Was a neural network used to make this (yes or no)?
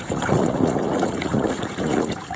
yes